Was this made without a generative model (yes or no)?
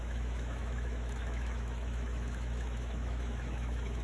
no